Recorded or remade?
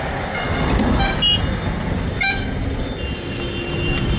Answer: recorded